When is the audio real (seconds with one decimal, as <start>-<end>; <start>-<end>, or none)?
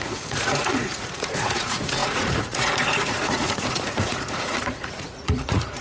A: none